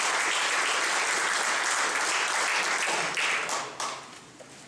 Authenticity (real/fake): real